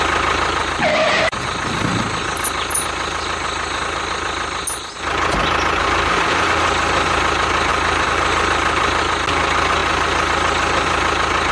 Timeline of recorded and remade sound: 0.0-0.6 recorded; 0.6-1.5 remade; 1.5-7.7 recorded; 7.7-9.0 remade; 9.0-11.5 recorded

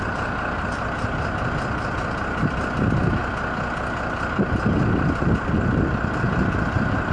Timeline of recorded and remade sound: 0.0-7.1 recorded

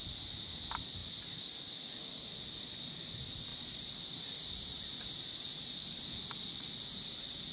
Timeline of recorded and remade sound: 0.0-3.5 recorded; 3.5-4.3 remade; 4.3-7.5 recorded

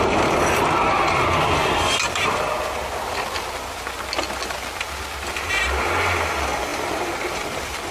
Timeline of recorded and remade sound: 0.0-6.7 recorded; 6.7-7.9 remade